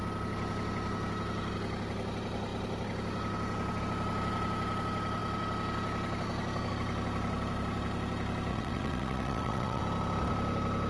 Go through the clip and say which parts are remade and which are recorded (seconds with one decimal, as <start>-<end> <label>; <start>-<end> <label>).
0.0-8.5 recorded; 8.5-9.8 remade; 9.8-10.9 recorded